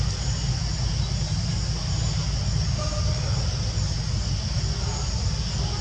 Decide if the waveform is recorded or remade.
recorded